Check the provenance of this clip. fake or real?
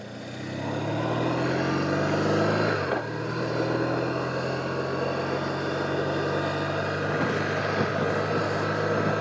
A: real